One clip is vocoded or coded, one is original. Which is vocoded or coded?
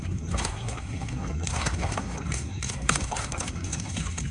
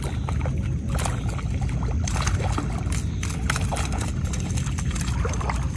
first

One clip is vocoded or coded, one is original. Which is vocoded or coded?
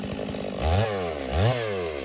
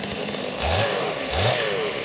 second